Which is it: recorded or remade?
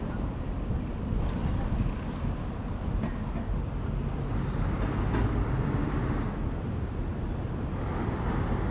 recorded